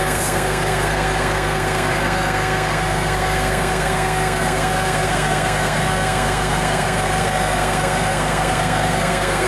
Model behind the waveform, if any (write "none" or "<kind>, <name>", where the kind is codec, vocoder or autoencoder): codec, SNAC